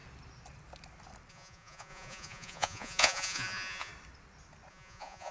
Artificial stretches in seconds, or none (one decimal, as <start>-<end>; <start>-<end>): 1.3-3.9; 4.7-5.3